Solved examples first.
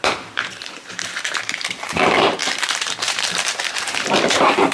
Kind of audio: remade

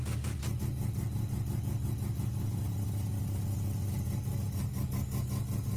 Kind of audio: recorded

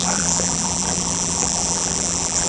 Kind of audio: remade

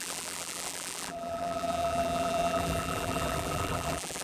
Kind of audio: remade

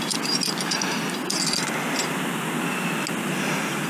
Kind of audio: recorded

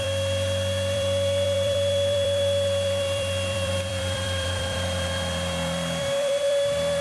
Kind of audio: remade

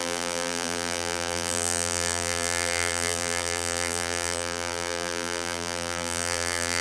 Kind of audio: remade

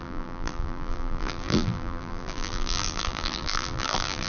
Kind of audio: remade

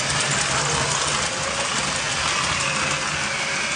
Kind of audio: recorded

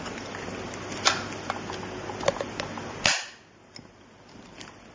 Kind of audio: recorded